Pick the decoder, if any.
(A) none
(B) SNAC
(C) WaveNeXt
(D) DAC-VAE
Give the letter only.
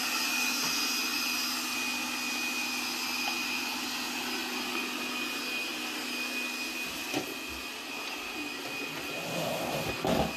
A